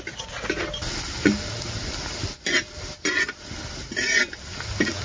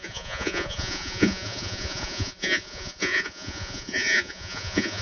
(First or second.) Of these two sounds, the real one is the first